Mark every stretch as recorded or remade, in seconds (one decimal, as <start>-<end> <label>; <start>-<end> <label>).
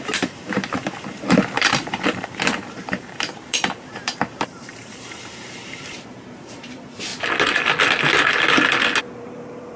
0.0-7.1 remade; 7.1-9.0 recorded; 9.0-9.8 remade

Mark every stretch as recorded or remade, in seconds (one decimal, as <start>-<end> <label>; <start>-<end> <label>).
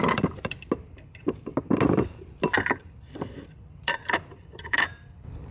0.0-1.5 remade; 1.5-3.6 recorded; 3.6-5.5 remade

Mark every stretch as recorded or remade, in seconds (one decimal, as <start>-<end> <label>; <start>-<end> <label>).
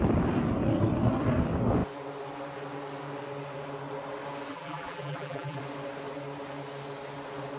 0.0-4.5 recorded; 4.5-5.6 remade; 5.6-7.6 recorded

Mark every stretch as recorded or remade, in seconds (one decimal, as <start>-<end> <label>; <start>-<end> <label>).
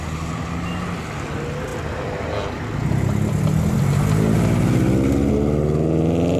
0.0-6.4 recorded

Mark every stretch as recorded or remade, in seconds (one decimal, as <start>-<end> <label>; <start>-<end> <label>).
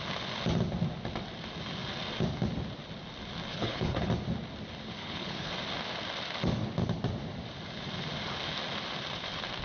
0.0-3.5 recorded; 3.5-4.1 remade; 4.1-5.0 recorded; 5.0-5.5 remade; 5.5-9.6 recorded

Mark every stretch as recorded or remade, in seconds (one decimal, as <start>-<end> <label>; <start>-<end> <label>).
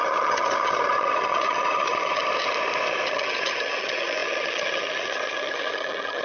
0.0-2.2 remade; 2.2-3.1 recorded; 3.1-6.2 remade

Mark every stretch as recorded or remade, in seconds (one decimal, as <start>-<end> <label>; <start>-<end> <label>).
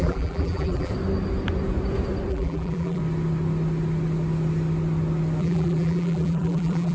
0.0-0.9 remade; 0.9-2.3 recorded; 2.3-3.0 remade; 3.0-5.4 recorded; 5.4-6.9 remade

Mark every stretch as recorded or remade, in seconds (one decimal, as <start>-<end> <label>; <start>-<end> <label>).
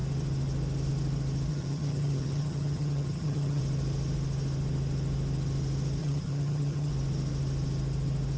0.0-1.5 recorded; 1.5-3.6 remade; 3.6-6.0 recorded; 6.0-6.9 remade; 6.9-8.4 recorded